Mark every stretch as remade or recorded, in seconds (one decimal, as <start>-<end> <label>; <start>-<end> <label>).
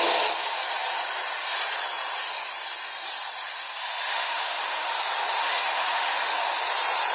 0.0-3.8 recorded; 3.8-4.9 remade; 4.9-5.4 recorded; 5.4-6.6 remade; 6.6-7.1 recorded